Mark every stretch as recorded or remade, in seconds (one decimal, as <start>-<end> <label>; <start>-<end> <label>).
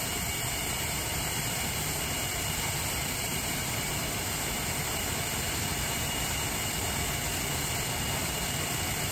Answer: 0.0-3.3 recorded; 3.3-3.9 remade; 3.9-9.1 recorded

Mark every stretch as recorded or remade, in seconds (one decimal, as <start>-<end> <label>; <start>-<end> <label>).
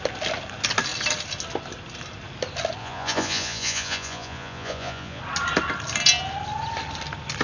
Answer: 0.0-2.8 recorded; 2.8-5.2 remade; 5.2-7.4 recorded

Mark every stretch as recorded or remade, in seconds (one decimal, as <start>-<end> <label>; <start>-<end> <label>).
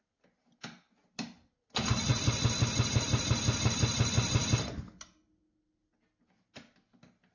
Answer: 0.0-7.3 recorded